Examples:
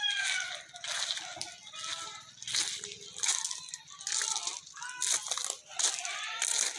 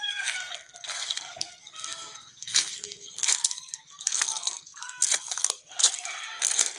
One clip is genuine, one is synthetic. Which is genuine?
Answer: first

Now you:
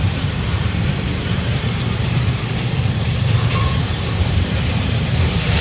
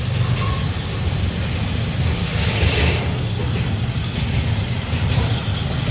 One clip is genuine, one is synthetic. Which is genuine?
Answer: second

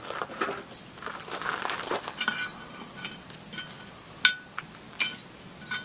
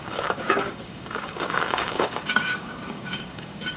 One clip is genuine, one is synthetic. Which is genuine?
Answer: first